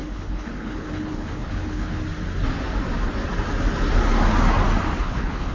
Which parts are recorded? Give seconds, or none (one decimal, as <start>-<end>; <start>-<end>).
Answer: 2.0-5.0

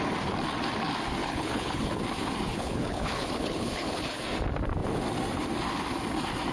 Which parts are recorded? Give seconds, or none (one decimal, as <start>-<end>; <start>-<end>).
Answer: 0.0-1.2; 2.0-2.5; 4.2-6.5

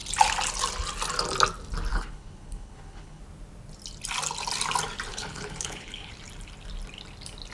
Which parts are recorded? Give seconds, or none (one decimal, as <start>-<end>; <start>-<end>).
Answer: 0.0-1.9; 3.2-5.1; 6.1-7.5